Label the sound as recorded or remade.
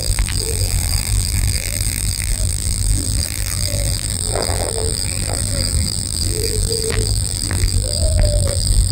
remade